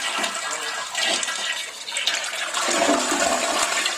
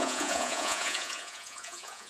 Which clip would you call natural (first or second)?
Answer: first